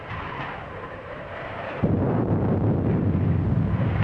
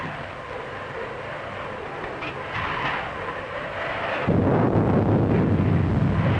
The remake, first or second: first